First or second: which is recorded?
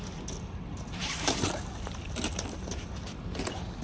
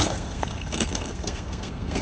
first